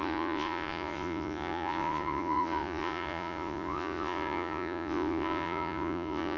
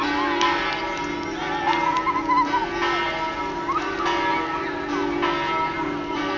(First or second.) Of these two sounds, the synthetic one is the first